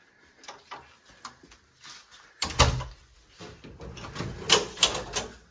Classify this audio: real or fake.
real